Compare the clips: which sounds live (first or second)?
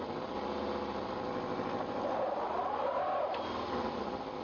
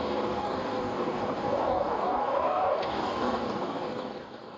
first